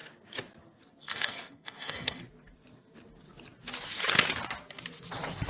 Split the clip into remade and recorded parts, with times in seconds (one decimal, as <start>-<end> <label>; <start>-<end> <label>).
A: 0.0-1.0 recorded; 1.0-2.2 remade; 2.2-5.5 recorded